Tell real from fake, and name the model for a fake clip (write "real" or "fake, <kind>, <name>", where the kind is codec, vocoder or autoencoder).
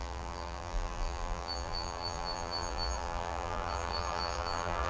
fake, vocoder, BigVGAN v2